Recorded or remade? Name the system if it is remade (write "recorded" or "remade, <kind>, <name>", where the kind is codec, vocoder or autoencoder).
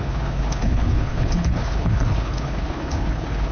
remade, codec, HILCodec